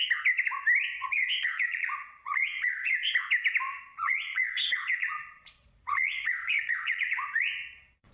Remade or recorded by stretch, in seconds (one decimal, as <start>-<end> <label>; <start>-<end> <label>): 0.0-1.0 recorded; 1.0-3.1 remade; 3.1-3.7 recorded; 3.7-8.1 remade